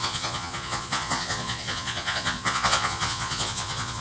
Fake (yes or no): yes